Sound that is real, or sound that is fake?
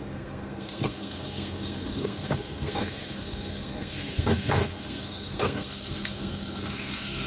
fake